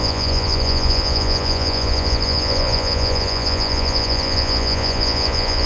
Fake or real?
fake